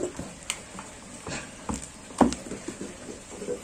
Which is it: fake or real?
real